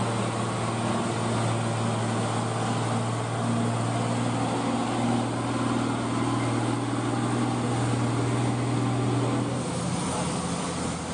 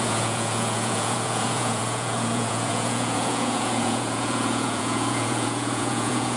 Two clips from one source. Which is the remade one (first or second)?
second